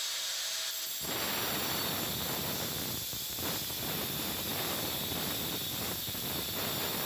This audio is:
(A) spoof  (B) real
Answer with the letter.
B